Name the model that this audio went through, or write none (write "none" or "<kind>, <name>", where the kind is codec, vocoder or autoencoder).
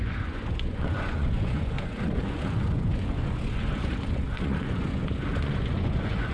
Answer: vocoder, Vocos